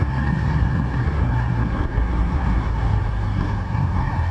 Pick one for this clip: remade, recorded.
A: remade